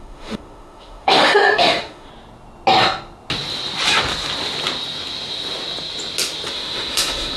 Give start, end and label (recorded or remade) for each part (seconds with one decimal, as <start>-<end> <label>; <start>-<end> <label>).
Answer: 0.0-2.1 remade; 2.1-6.5 recorded; 6.5-7.4 remade